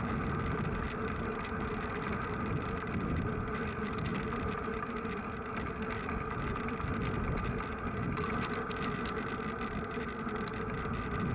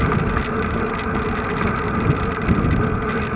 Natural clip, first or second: second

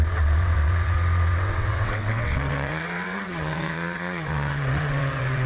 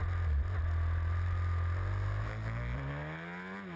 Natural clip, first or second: second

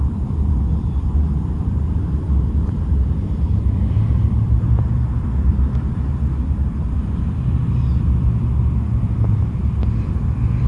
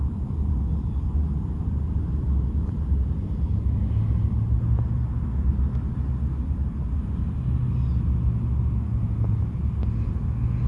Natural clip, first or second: second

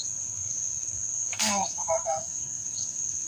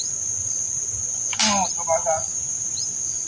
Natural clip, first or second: second